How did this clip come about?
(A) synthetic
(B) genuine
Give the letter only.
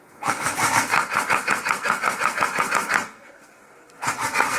A